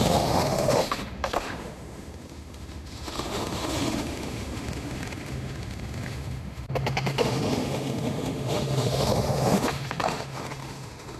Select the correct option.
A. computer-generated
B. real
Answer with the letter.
A